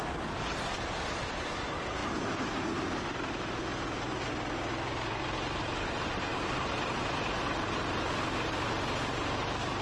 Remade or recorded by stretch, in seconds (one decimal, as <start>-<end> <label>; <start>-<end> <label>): 0.0-6.3 recorded; 6.3-7.0 remade; 7.0-9.8 recorded